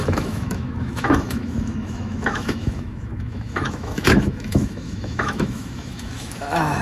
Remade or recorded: remade